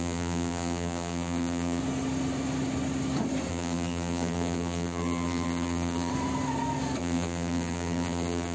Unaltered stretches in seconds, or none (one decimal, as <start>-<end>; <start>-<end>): 1.8-3.5; 6.1-7.0